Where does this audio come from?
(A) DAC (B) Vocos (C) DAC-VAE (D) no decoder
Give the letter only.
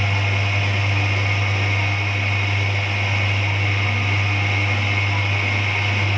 D